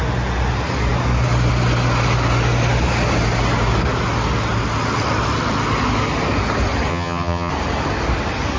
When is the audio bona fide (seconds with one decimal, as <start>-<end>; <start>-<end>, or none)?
0.0-6.9; 7.5-8.6